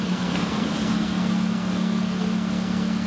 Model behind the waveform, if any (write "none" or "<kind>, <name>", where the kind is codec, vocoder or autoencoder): codec, SNAC